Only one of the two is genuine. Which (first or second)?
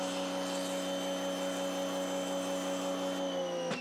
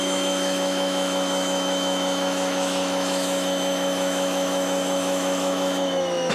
first